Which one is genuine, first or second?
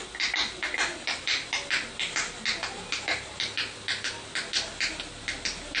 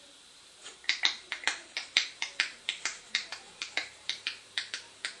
first